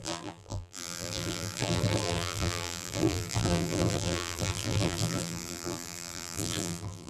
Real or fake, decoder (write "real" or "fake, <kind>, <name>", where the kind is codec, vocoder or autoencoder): fake, vocoder, BigVGAN v2